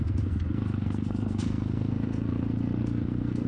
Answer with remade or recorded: remade